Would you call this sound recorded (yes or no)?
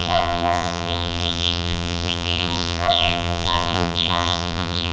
no